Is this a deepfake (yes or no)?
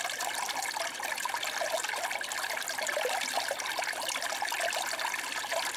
no